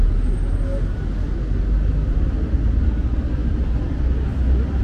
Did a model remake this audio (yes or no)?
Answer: no